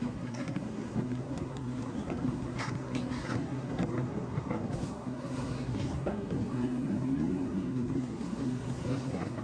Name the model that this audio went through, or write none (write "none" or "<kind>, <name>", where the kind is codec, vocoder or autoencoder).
codec, SNAC